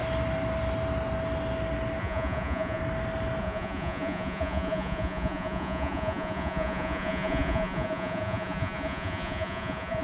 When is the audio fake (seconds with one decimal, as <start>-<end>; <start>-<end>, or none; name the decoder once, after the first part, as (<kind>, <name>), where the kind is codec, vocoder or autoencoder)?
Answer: 2.0-2.8 (vocoder, Vocos); 3.4-10.0